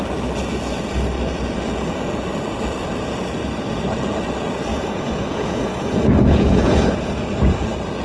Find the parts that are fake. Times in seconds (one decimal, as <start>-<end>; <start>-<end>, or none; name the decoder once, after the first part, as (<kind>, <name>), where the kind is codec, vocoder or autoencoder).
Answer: 4.7-7.1 (vocoder, Vocos)